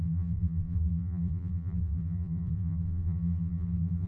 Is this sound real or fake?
fake